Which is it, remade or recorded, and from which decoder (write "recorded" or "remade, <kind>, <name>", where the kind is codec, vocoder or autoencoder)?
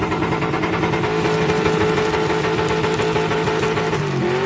recorded